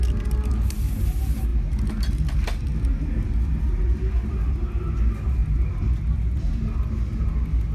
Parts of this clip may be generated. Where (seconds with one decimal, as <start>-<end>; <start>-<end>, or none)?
none